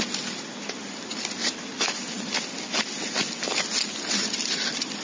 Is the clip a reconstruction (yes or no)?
no